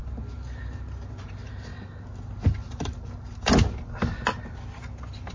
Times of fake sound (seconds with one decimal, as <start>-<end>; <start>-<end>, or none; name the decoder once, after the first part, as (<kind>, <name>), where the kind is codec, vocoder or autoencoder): none